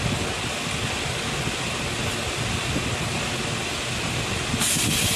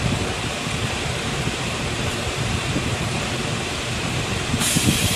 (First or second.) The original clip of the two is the first